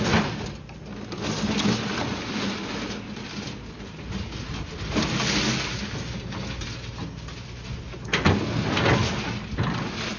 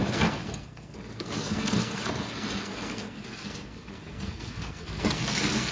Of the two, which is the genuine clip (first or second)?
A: first